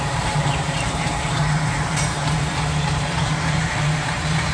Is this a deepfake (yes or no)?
yes